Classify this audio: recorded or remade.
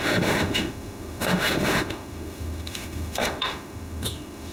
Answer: remade